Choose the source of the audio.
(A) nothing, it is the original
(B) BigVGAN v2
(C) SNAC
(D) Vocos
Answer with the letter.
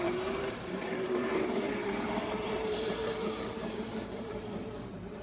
B